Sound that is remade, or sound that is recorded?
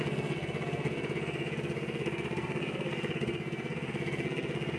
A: remade